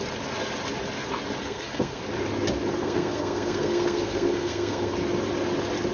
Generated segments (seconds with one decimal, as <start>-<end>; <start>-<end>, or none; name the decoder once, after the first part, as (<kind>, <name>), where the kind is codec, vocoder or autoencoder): 1.4-2.0 (codec, SNAC); 2.8-4.9